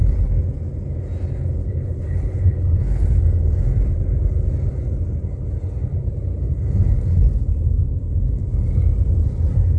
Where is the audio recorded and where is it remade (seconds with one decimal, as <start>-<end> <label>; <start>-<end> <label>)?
0.0-1.6 recorded; 1.6-3.2 remade; 3.2-5.9 recorded; 5.9-6.5 remade; 6.5-9.8 recorded